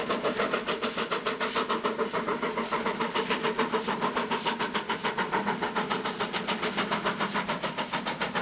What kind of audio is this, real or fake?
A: real